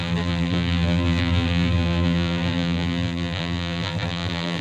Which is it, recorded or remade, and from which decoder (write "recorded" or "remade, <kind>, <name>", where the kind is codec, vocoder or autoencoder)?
remade, vocoder, BigVGAN v2